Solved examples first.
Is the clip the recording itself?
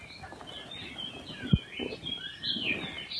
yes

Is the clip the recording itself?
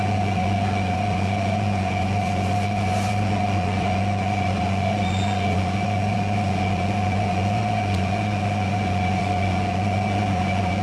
no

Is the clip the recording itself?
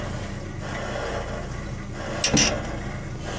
yes